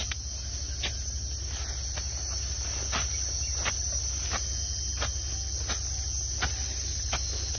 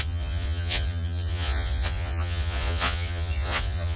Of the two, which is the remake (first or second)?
second